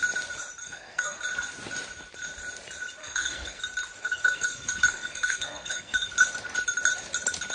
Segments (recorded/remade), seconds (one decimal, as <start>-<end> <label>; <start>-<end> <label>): 0.0-0.6 recorded; 0.6-1.2 remade; 1.2-3.0 recorded; 3.0-3.6 remade; 3.6-4.0 recorded; 4.0-6.1 remade; 6.1-7.5 recorded